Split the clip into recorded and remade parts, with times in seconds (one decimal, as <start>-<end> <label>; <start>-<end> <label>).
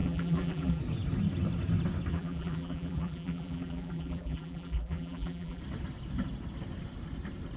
0.0-0.8 remade; 0.8-2.1 recorded; 2.1-5.6 remade; 5.6-7.6 recorded